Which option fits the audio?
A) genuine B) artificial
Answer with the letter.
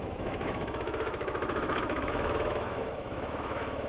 B